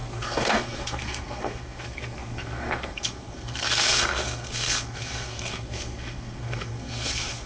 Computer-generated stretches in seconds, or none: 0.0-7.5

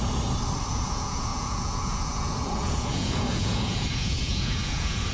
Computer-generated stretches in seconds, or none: 0.7-5.1

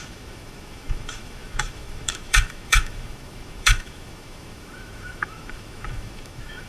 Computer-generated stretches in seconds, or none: 0.0-6.7

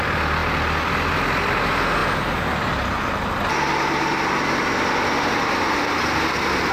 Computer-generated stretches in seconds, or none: none

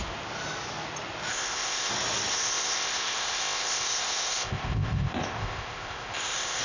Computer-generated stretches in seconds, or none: 1.3-1.9; 2.3-6.6

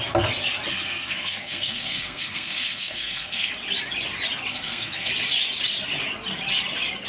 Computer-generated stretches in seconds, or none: 0.7-3.5; 4.5-5.1